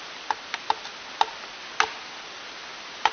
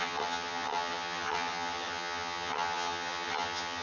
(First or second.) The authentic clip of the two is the first